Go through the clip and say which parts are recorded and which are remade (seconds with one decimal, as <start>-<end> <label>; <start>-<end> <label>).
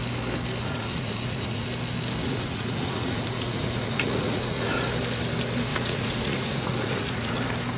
0.0-0.6 recorded; 0.6-1.7 remade; 1.7-2.2 recorded; 2.2-4.7 remade; 4.7-5.7 recorded; 5.7-7.3 remade; 7.3-7.8 recorded